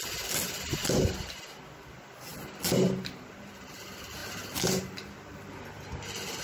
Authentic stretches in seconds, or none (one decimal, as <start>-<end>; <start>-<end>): 0.0-6.4